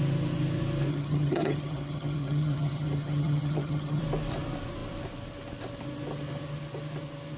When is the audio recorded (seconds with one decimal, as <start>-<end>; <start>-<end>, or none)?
0.0-0.9; 4.0-7.4